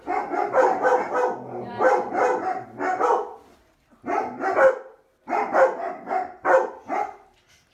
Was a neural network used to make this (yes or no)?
no